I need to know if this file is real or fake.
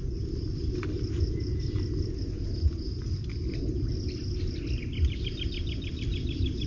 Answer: real